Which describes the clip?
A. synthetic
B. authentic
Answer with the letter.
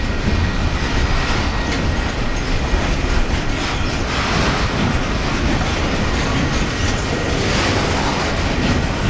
B